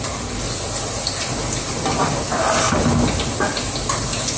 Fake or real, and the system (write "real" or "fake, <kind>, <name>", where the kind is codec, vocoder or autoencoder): real